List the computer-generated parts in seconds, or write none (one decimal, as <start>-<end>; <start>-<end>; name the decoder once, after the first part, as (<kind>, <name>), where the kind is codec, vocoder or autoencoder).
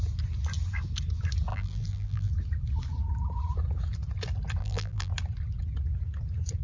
1.5-2.3 (vocoder, BigVGAN v2); 4.6-5.1